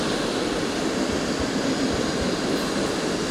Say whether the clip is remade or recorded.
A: recorded